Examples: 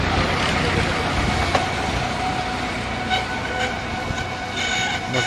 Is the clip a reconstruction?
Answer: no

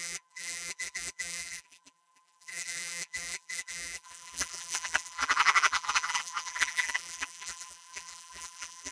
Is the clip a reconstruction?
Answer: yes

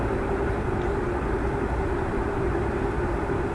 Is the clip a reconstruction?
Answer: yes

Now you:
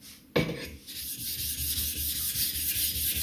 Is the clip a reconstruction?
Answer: no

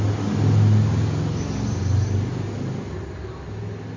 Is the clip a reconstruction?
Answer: no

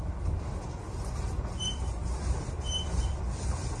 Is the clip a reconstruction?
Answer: yes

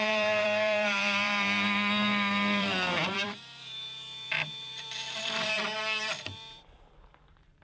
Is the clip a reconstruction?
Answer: yes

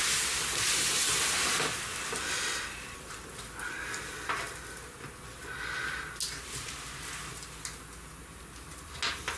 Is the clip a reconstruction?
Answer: no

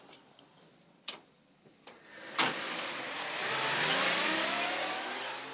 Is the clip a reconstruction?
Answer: no